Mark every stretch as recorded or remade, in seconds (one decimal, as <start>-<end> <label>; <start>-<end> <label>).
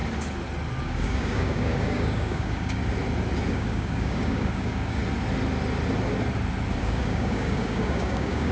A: 0.0-0.8 recorded; 0.8-2.8 remade; 2.8-3.5 recorded; 3.5-5.0 remade; 5.0-6.8 recorded; 6.8-8.5 remade